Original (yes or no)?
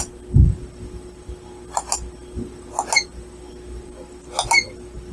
yes